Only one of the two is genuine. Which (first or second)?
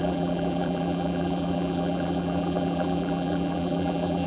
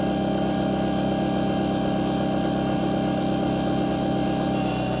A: second